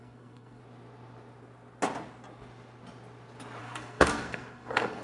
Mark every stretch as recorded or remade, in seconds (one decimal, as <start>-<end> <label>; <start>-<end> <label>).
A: 0.0-0.6 remade; 0.6-3.6 recorded; 3.6-5.0 remade